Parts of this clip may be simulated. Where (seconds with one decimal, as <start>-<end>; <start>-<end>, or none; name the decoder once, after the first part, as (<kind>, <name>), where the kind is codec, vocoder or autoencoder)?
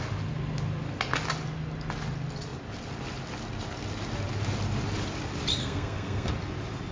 5.6-6.3 (codec, SNAC)